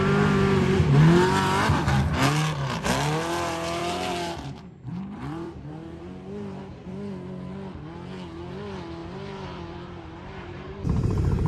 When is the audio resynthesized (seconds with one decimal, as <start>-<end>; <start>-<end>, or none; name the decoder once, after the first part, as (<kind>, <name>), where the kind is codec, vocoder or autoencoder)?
3.8-6.6 (vocoder, BigVGAN v2); 9.0-11.5